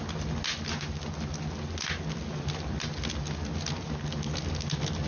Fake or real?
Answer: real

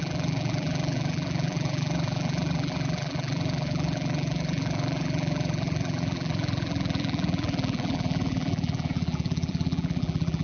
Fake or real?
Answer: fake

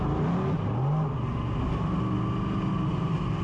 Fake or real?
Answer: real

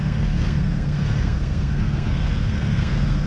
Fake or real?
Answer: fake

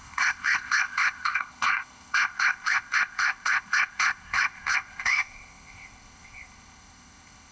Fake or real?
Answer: fake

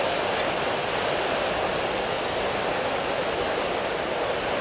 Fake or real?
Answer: real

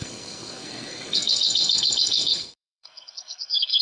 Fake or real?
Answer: fake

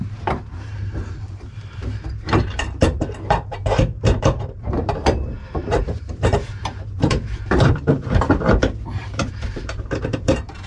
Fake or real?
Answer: fake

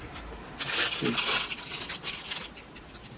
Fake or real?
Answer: real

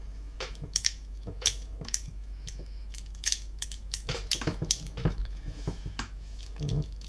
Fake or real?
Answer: fake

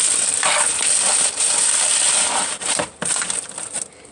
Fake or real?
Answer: fake